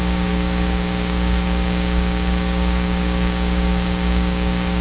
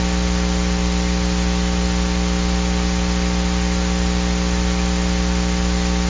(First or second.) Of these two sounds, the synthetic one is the first